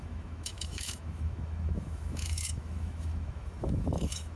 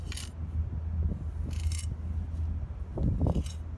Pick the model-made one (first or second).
first